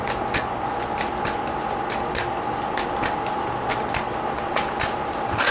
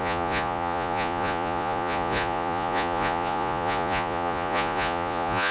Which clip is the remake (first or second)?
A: second